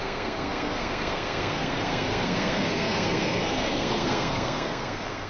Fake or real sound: fake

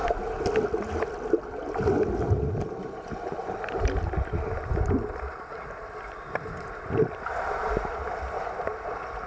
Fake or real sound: real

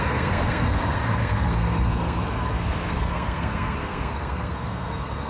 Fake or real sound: fake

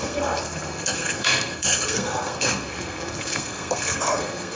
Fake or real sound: fake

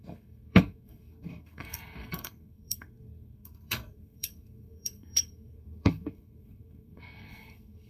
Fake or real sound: fake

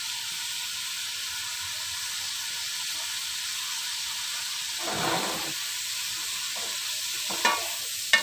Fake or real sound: real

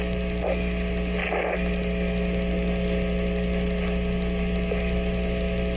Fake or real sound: real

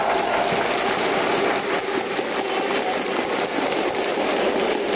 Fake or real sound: real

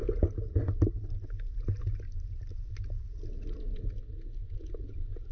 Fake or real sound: real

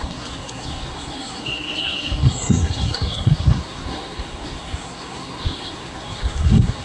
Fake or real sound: fake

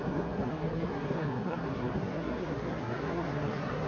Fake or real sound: fake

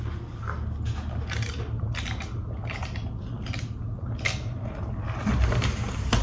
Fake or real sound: real